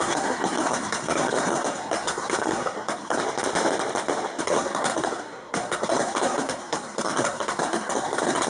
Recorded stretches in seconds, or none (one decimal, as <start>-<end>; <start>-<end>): 3.2-4.4